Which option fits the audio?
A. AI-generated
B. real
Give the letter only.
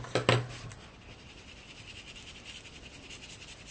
B